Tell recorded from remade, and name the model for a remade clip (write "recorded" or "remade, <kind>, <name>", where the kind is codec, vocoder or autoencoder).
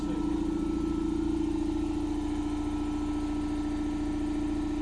recorded